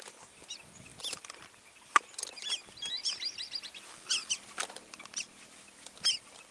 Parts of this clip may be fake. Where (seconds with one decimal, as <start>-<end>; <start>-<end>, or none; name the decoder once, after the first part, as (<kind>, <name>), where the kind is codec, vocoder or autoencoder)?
none